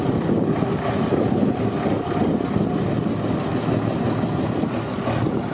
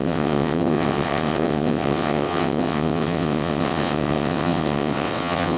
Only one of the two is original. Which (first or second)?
first